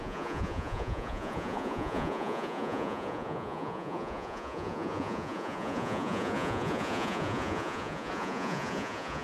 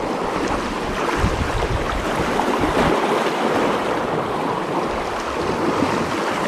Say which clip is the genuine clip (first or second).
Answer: second